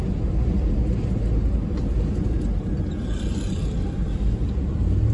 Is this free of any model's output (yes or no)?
yes